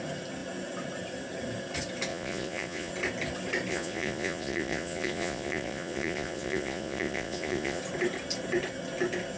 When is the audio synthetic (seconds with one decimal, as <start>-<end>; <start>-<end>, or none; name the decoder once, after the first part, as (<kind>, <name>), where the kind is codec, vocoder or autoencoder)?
2.1-2.9 (vocoder, Vocos); 3.7-7.8